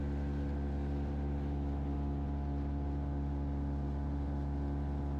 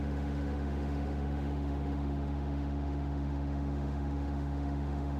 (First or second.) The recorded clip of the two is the first